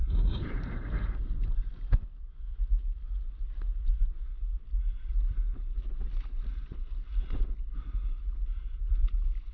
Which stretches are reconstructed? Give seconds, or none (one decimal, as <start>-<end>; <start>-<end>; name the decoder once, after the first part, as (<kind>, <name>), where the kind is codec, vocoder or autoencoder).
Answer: 0.0-1.9 (vocoder, BigVGAN v2)